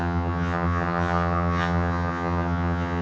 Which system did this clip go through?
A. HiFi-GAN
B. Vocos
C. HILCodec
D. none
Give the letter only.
A